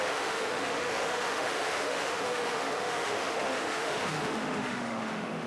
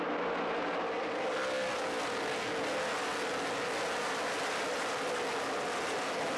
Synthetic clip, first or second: first